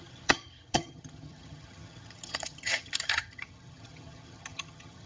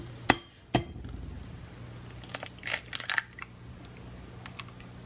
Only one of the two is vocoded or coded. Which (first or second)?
first